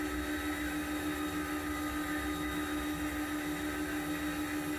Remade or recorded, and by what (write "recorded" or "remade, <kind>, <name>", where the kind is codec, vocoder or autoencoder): recorded